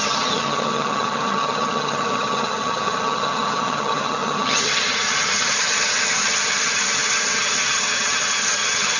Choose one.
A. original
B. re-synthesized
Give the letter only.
B